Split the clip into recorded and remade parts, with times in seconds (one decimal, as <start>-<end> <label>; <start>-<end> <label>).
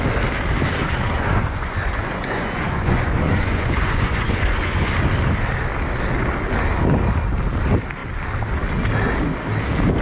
0.0-0.8 recorded; 0.8-4.9 remade; 4.9-10.0 recorded